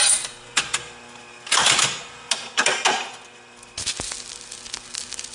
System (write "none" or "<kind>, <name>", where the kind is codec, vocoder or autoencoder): none